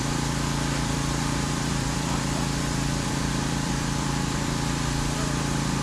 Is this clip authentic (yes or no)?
no